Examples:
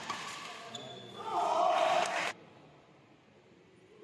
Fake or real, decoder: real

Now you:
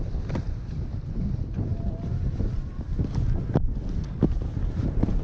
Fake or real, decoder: real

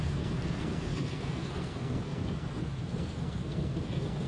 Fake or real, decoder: fake, codec, SNAC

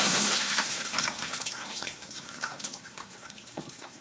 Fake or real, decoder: fake, codec, SNAC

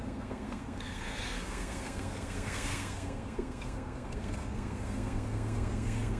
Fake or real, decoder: fake, codec, SNAC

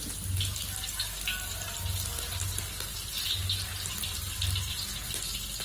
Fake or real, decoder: real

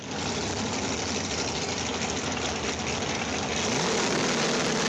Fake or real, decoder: real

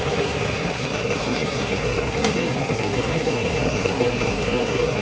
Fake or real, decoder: fake, codec, SNAC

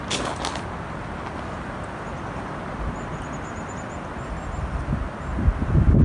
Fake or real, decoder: real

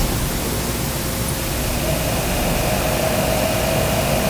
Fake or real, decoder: real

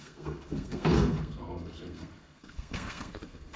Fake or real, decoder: fake, codec, SNAC